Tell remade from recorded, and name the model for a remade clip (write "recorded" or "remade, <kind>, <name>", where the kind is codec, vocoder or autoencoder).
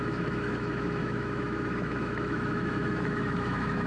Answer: remade, autoencoder, DAC-VAE